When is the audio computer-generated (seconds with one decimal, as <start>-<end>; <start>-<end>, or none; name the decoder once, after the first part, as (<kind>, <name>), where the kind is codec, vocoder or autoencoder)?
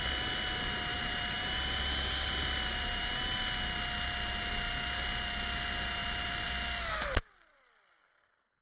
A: 0.9-3.4 (vocoder, BigVGAN v2); 6.0-6.5